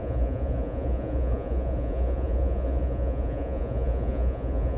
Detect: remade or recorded remade